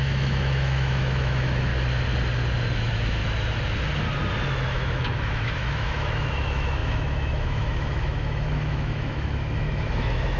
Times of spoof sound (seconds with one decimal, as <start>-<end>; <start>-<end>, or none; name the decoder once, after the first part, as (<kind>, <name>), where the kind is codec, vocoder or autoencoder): 0.0-1.7 (autoencoder, DAC-VAE); 2.8-3.2; 4.5-10.4